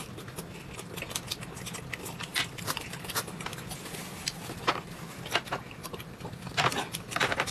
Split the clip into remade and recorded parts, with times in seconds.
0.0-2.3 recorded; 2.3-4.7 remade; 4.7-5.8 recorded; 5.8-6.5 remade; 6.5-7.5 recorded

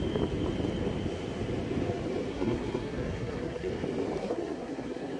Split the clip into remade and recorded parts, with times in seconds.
0.0-2.3 recorded; 2.3-3.7 remade; 3.7-4.2 recorded; 4.2-5.2 remade

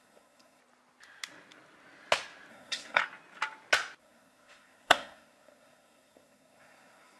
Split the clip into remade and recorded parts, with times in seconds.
0.0-0.6 remade; 0.6-2.5 recorded; 2.5-3.0 remade; 3.0-4.0 recorded; 4.0-7.2 remade